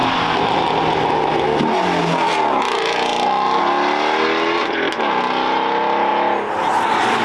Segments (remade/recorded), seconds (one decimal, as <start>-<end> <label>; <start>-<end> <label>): 0.0-7.2 recorded